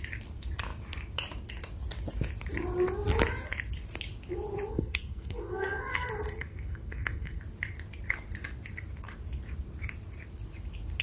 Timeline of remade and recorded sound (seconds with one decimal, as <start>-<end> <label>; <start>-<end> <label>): 0.0-4.7 recorded; 4.7-7.4 remade; 7.4-11.0 recorded